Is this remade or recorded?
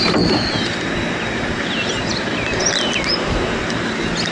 recorded